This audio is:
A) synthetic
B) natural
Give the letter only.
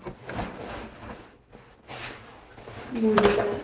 B